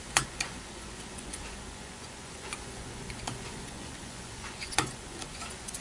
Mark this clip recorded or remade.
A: remade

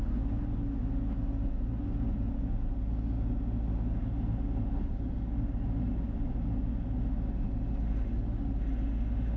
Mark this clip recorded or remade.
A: recorded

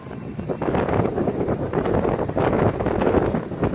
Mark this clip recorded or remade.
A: recorded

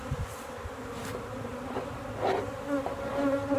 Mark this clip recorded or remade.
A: recorded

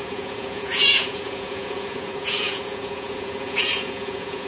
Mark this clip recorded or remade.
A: remade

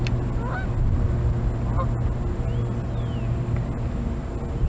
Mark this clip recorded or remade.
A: recorded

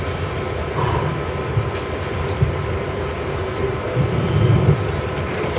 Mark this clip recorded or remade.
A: recorded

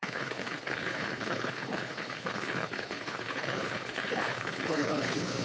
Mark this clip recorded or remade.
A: remade